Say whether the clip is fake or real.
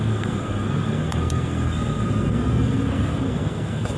fake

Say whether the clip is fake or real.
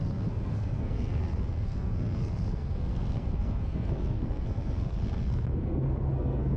fake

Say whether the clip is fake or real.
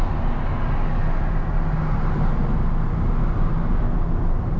real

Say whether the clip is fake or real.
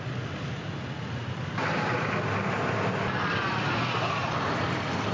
real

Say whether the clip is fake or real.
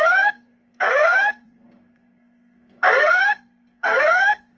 fake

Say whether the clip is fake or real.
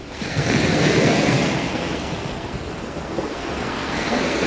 fake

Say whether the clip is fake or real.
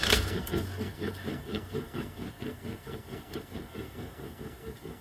fake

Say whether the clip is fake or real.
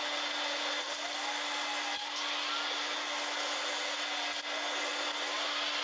real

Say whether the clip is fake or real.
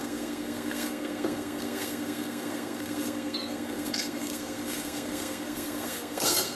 fake